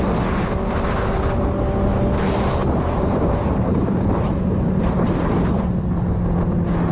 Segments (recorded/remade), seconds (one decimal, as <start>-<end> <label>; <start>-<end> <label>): 0.0-2.6 recorded; 2.6-5.3 remade; 5.3-6.9 recorded